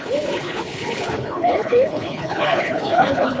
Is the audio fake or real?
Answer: fake